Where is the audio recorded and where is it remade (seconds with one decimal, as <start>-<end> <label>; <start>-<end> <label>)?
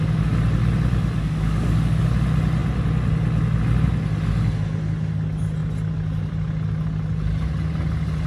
0.0-1.2 recorded; 1.2-2.0 remade; 2.0-8.3 recorded